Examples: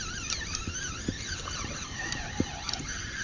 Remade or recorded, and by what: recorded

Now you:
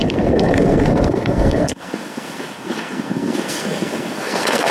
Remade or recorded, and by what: remade, codec, SNAC